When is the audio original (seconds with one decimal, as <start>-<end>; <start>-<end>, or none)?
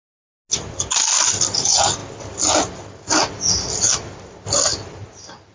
0.0-5.5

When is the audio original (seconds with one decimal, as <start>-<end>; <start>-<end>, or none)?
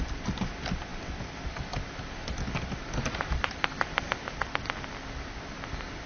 0.0-6.1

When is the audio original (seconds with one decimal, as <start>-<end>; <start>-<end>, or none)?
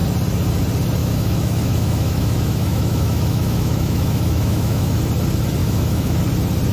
0.0-1.0; 5.0-5.6; 6.2-6.7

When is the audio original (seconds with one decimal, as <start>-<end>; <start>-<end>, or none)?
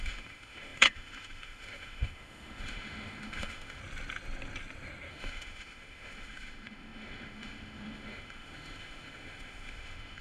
3.8-5.1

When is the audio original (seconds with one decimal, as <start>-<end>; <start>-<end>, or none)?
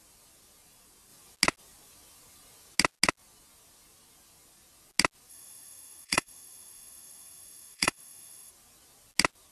0.0-5.3; 8.5-9.5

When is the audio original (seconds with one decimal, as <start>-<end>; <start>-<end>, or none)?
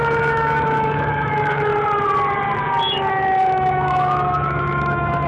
1.7-3.1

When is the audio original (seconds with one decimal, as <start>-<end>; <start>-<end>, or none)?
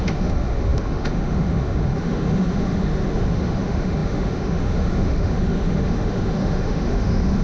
none